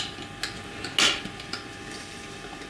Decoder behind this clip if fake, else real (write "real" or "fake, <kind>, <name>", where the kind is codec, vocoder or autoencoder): real